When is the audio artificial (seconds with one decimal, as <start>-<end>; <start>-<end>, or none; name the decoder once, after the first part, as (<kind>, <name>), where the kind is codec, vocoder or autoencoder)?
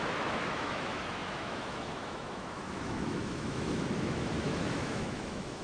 0.0-5.6 (autoencoder, DAC-VAE)